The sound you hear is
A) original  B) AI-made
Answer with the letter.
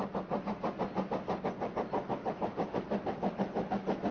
A